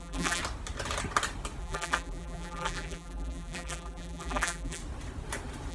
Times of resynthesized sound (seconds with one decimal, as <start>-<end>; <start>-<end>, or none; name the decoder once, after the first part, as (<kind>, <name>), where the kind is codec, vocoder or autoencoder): 0.0-0.4 (vocoder, BigVGAN v2); 1.6-4.8

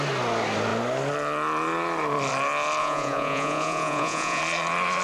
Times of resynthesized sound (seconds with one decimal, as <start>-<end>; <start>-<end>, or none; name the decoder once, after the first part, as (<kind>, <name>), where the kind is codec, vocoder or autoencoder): 2.8-4.4 (vocoder, Vocos)

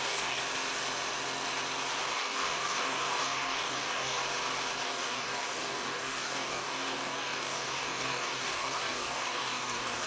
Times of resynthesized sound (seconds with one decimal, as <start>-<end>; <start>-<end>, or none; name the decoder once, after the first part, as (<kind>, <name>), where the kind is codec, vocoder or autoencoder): 0.0-0.4 (codec, DAC); 2.1-4.2; 4.8-10.1

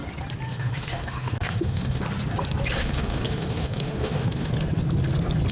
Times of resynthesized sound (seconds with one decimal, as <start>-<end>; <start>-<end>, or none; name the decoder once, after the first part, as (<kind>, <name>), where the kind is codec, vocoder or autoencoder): 0.5-2.0 (autoencoder, DAC-VAE); 2.8-4.5

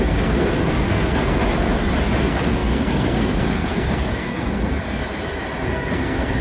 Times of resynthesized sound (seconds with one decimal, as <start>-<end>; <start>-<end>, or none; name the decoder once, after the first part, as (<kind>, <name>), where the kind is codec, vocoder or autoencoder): 0.0-1.4 (codec, SNAC); 2.2-5.0; 5.7-6.4

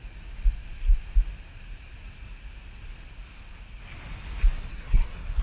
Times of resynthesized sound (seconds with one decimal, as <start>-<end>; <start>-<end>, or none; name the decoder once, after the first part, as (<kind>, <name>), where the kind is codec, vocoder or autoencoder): 4.7-5.4 (codec, SNAC)